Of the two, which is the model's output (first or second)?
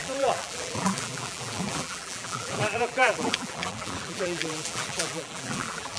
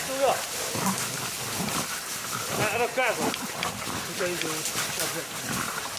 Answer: first